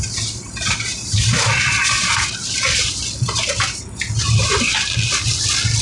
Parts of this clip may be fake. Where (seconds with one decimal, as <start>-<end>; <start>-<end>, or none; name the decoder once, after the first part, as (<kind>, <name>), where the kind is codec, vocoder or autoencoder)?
none